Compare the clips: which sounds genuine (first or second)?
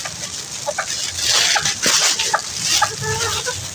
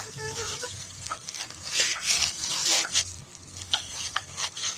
first